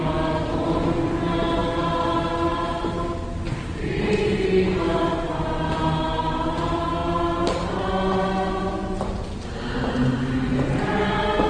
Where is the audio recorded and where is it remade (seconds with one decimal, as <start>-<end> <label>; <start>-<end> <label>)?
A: 0.0-11.5 recorded